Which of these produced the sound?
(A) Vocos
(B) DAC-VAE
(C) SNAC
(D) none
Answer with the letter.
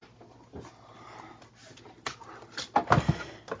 D